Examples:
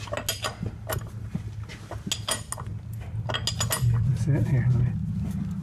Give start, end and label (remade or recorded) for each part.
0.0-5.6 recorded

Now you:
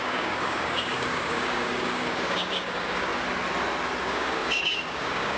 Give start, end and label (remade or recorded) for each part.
0.0-3.1 remade; 3.1-4.0 recorded; 4.0-5.4 remade

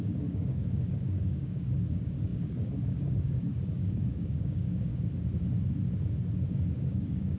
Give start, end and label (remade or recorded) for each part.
0.0-4.9 remade; 4.9-6.7 recorded; 6.7-7.4 remade

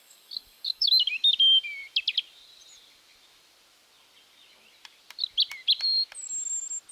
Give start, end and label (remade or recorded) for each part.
0.0-0.9 remade; 0.9-6.9 recorded

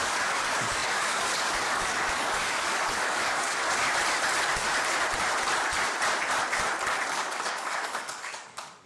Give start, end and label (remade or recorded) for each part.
0.0-3.6 remade; 3.6-7.1 recorded; 7.1-8.9 remade

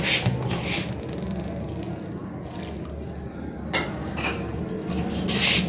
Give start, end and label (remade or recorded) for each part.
0.0-4.0 recorded; 4.0-4.6 remade; 4.6-5.7 recorded